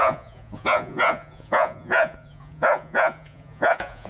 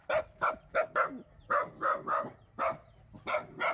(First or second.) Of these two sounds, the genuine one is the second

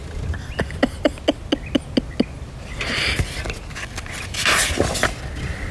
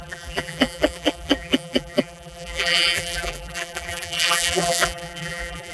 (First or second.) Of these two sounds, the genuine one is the first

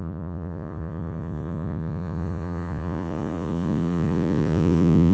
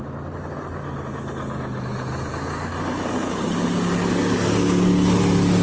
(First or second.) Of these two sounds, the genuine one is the second